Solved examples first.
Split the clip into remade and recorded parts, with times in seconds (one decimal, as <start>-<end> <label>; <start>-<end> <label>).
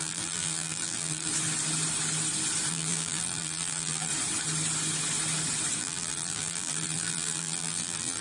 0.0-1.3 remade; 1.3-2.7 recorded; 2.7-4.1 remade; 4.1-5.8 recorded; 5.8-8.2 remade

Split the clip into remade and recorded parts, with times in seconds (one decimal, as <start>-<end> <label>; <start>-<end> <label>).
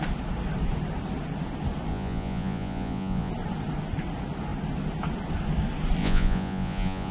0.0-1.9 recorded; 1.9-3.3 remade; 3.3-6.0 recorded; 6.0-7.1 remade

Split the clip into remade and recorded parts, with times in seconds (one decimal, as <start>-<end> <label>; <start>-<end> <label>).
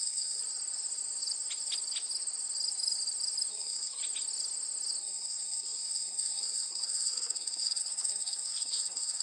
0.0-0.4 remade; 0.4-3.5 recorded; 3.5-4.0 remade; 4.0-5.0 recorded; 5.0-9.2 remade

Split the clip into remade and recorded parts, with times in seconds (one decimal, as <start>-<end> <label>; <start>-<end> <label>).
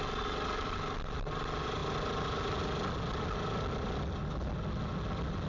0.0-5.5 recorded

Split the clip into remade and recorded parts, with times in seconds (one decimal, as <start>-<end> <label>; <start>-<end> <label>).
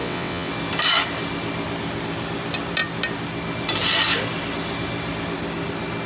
0.0-0.5 remade; 0.5-6.1 recorded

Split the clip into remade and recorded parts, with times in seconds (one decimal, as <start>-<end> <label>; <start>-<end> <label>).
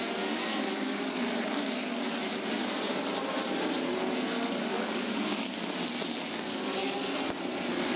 0.0-2.6 recorded; 2.6-3.2 remade; 3.2-4.7 recorded; 4.7-5.9 remade; 5.9-8.0 recorded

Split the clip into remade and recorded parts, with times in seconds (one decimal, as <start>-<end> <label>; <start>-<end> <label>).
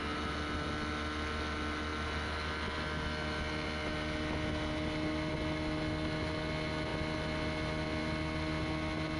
0.0-9.2 recorded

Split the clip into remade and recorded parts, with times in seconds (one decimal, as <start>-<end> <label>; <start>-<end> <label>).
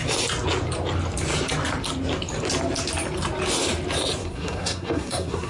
0.0-4.2 recorded; 4.2-5.5 remade